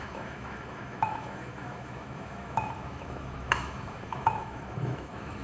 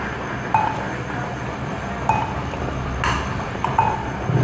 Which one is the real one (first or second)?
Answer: second